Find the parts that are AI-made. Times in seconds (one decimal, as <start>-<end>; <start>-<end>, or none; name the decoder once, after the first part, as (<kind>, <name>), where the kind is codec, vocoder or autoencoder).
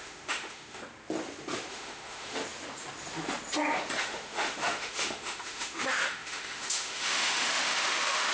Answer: 0.0-0.8 (autoencoder, DAC-VAE); 1.7-2.4; 4.0-8.3